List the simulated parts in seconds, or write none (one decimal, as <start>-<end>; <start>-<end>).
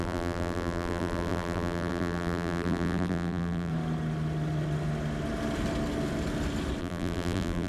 0.0-3.7; 6.8-7.7